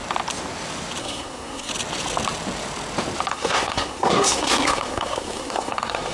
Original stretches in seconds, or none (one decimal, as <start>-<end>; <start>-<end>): 0.0-1.0; 1.7-3.3